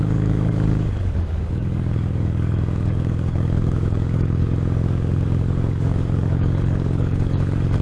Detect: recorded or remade remade